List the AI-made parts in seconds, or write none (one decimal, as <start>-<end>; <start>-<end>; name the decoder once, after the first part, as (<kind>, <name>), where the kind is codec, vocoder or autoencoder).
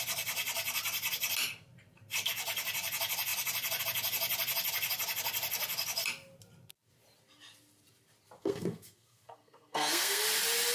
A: 8.4-10.2 (codec, SNAC)